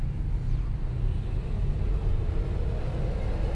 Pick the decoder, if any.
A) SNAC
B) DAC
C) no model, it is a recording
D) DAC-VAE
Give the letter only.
C